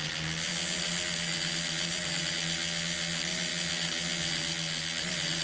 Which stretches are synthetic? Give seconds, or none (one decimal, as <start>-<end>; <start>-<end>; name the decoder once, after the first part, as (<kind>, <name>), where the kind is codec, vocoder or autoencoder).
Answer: none